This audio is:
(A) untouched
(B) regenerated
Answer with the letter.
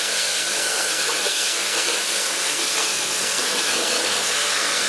B